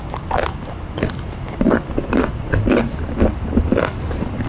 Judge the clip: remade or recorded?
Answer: recorded